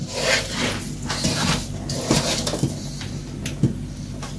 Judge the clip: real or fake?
real